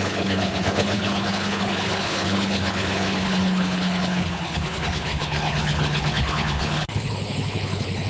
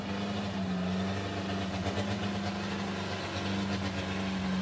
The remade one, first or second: first